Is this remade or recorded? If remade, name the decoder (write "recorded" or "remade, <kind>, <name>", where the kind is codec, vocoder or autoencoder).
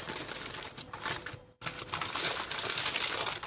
recorded